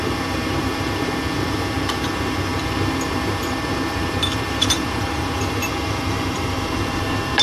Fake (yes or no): yes